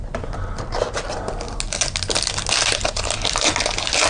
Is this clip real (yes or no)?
yes